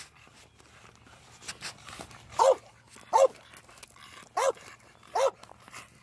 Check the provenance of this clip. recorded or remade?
recorded